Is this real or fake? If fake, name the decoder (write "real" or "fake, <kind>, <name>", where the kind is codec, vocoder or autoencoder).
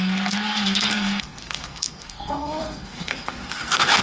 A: fake, codec, SNAC